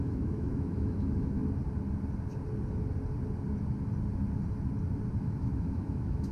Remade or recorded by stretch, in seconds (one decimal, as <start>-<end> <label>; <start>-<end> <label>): 0.0-1.4 remade; 1.4-5.2 recorded; 5.2-6.3 remade